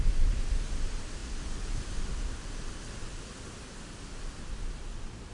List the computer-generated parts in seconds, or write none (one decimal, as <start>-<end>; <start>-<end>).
none